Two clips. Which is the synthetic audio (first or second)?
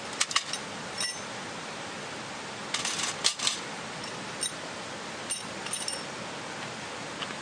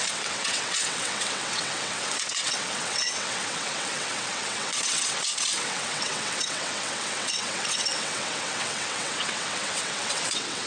second